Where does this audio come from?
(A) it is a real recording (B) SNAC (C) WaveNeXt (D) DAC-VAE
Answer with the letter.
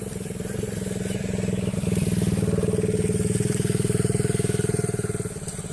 A